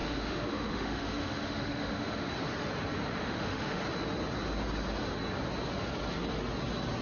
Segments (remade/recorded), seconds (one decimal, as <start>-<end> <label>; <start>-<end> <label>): 0.0-2.3 remade; 2.3-3.2 recorded; 3.2-3.8 remade; 3.8-7.0 recorded